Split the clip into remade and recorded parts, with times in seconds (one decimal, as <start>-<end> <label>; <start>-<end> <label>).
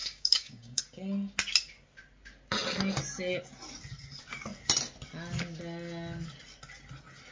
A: 0.0-0.8 remade; 0.8-7.3 recorded